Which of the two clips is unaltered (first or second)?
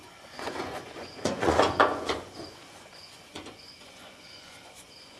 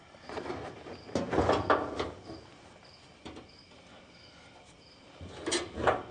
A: second